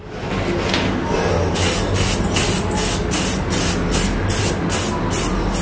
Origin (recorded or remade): recorded